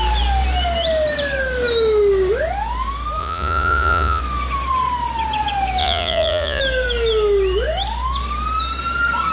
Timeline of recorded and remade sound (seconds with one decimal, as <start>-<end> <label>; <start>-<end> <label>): 0.0-3.2 recorded; 3.2-4.2 remade; 4.2-5.8 recorded; 5.8-6.6 remade; 6.6-9.3 recorded